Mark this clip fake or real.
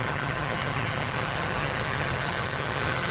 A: fake